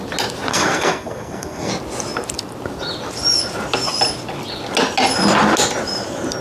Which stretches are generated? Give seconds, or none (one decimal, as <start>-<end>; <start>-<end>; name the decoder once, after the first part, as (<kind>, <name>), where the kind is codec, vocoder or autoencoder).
0.5-1.7 (codec, SNAC)